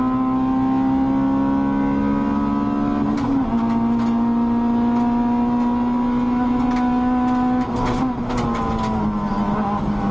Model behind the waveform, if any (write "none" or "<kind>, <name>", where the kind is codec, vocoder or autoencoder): none